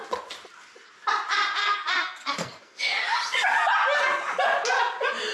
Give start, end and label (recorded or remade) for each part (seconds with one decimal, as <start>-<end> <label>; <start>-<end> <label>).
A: 0.0-1.6 recorded; 1.6-2.8 remade; 2.8-5.3 recorded